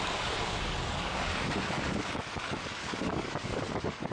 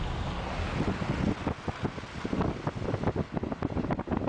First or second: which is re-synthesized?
first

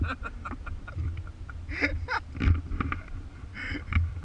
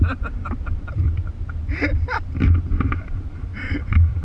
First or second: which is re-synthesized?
second